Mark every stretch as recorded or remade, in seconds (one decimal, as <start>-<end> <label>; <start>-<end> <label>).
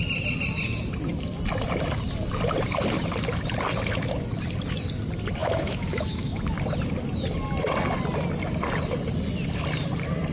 0.0-5.4 recorded; 5.4-6.4 remade; 6.4-10.3 recorded